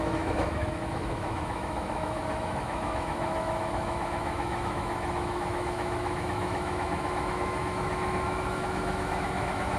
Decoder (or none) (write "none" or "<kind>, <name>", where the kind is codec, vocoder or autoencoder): autoencoder, DAC-VAE